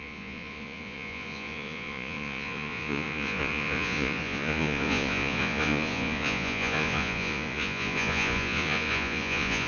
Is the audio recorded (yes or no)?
no